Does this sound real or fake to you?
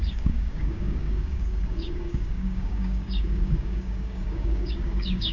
fake